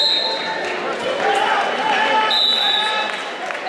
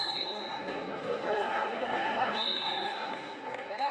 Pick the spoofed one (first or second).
second